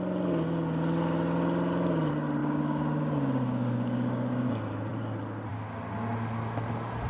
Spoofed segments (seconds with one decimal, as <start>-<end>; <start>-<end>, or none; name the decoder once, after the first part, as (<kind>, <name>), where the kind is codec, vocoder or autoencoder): 2.4-4.5 (codec, DAC)